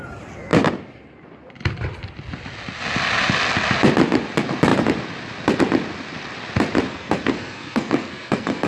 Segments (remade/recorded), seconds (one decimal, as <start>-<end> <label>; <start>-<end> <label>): 0.0-6.9 recorded; 6.9-8.7 remade